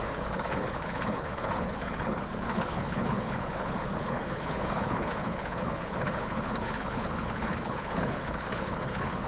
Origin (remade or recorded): remade